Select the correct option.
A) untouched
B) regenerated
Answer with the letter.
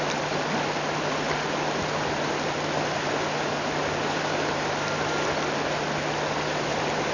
A